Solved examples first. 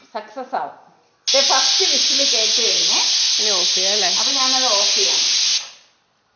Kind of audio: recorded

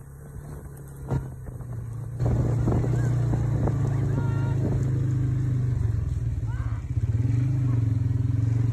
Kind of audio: recorded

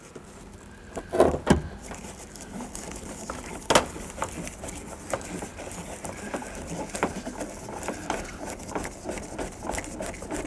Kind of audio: recorded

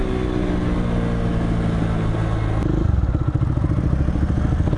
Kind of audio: recorded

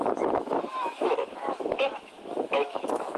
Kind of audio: remade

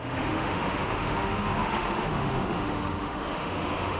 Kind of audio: remade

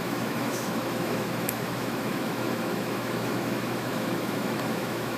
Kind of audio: remade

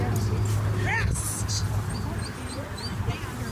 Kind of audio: recorded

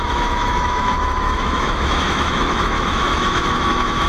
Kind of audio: remade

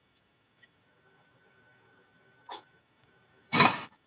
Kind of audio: remade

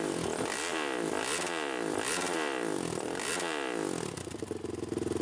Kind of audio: recorded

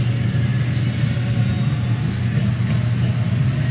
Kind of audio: recorded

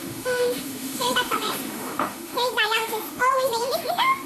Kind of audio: remade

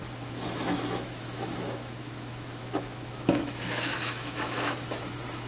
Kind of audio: remade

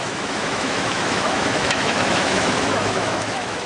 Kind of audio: remade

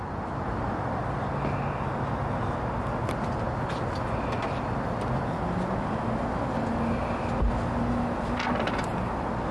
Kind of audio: recorded